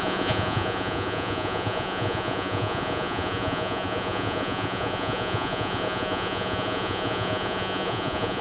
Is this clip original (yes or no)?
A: no